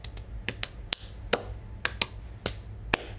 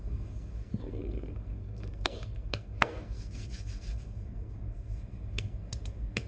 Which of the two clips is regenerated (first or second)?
second